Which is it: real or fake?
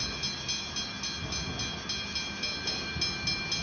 real